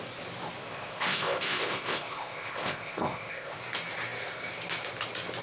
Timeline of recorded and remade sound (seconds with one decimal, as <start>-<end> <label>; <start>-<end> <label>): 0.0-0.6 recorded; 0.6-3.6 remade; 3.6-5.4 recorded

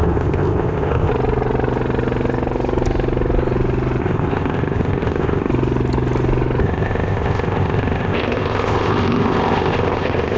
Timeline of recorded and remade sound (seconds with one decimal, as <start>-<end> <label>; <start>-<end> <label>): 0.0-1.1 remade; 1.1-4.0 recorded; 4.0-5.5 remade; 5.5-6.6 recorded; 6.6-10.4 remade

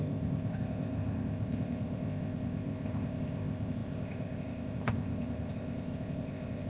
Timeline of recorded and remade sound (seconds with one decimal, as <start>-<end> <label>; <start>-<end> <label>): 0.0-6.7 remade

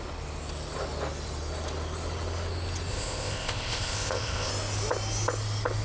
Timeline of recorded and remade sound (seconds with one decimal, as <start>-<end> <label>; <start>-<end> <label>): 0.0-2.9 recorded; 2.9-4.5 remade; 4.5-5.8 recorded

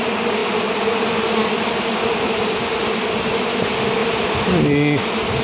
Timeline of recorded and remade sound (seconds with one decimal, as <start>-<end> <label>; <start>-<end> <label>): 0.0-5.4 recorded

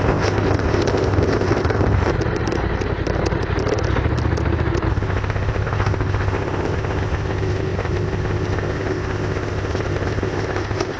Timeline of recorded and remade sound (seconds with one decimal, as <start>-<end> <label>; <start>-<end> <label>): 0.0-2.1 remade; 2.1-4.9 recorded; 4.9-11.0 remade

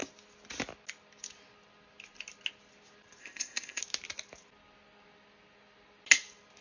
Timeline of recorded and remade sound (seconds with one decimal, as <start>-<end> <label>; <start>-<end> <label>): 0.0-3.2 recorded; 3.2-3.8 remade; 3.8-6.6 recorded